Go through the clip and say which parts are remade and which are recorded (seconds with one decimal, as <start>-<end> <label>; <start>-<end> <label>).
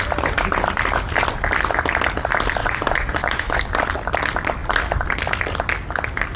0.0-2.6 recorded; 2.6-3.6 remade; 3.6-6.4 recorded